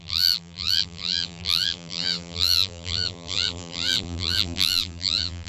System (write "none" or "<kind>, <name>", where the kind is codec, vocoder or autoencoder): vocoder, BigVGAN v2